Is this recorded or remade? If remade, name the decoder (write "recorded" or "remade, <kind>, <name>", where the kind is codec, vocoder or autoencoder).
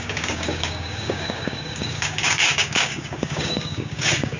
remade, codec, DAC